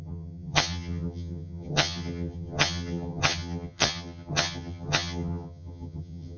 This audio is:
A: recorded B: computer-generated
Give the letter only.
B